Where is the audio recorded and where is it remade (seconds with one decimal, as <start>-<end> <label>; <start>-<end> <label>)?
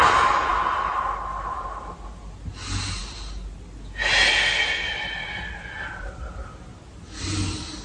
0.0-7.8 recorded